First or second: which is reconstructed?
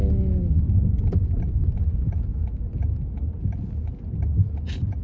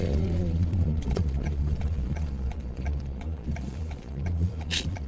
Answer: second